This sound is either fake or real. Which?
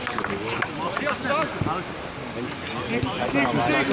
real